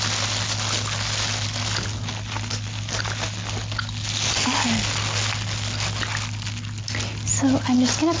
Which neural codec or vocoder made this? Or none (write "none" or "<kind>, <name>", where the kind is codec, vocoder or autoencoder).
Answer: none